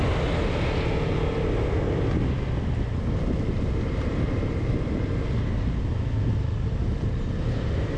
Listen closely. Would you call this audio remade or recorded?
recorded